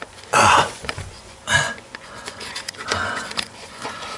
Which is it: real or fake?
fake